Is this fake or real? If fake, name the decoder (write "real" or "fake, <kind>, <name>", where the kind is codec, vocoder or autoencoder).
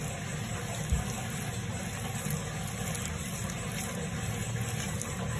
real